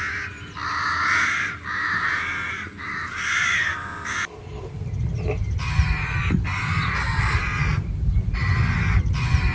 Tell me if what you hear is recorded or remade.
recorded